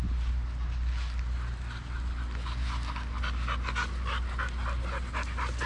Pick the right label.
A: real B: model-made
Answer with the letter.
A